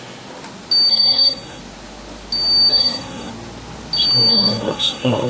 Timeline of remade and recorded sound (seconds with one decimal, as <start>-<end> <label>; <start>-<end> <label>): 0.0-0.9 recorded; 0.9-1.6 remade; 1.6-2.7 recorded; 2.7-3.3 remade; 3.3-4.3 recorded; 4.3-5.3 remade